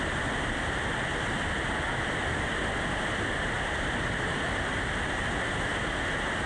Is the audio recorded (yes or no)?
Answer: yes